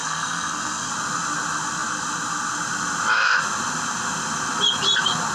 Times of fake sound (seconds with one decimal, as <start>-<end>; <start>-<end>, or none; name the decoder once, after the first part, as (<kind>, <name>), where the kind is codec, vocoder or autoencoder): 0.0-0.9 (codec, SNAC)